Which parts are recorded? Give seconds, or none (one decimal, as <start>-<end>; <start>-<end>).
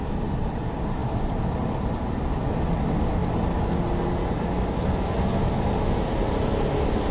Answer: 0.0-7.1